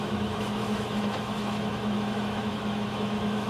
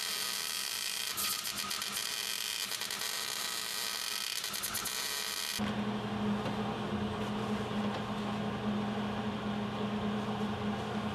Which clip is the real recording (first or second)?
second